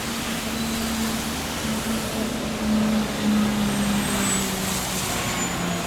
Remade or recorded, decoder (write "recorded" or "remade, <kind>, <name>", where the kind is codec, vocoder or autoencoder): recorded